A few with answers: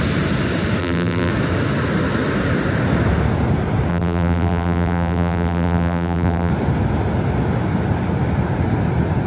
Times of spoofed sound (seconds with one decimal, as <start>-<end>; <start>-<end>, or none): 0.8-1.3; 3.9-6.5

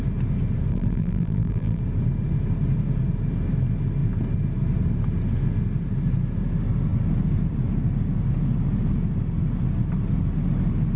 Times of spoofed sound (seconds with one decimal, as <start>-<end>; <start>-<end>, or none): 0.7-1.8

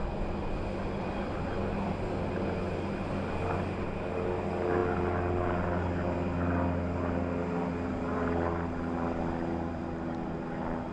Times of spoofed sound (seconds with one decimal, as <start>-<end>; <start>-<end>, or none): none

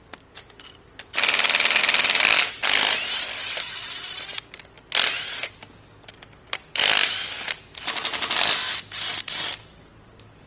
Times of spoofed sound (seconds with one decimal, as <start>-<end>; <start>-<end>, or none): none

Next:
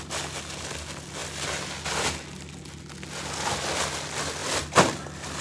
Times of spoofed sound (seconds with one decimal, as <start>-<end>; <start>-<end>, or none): 4.4-5.0

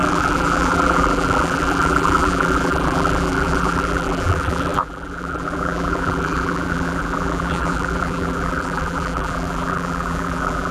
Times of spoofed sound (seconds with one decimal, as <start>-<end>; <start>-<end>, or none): 0.0-10.7

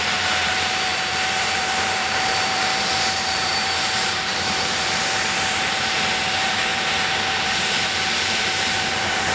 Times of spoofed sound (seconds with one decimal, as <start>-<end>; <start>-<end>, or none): 0.0-9.3

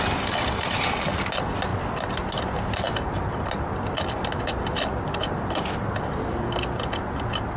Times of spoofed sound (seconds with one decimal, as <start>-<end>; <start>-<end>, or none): none